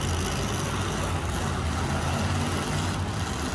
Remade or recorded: recorded